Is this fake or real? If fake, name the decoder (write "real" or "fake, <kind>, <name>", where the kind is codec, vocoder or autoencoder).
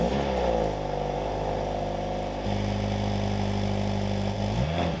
real